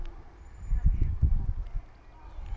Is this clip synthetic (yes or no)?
no